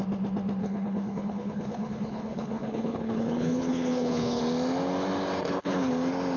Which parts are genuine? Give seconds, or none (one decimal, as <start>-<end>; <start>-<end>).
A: 0.0-0.6; 4.4-5.4; 5.9-6.4